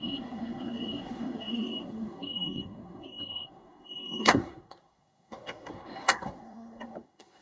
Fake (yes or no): yes